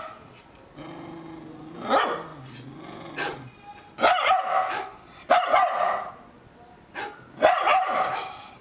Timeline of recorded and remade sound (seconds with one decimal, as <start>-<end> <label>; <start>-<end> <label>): 0.0-7.7 recorded; 7.7-8.6 remade